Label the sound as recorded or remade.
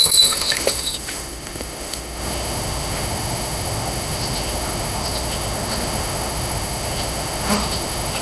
remade